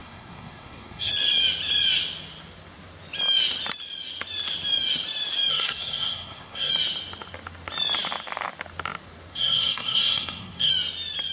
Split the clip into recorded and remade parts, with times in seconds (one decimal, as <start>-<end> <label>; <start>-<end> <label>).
0.0-1.1 remade; 1.1-5.5 recorded; 5.5-6.7 remade; 6.7-9.3 recorded; 9.3-10.7 remade; 10.7-11.3 recorded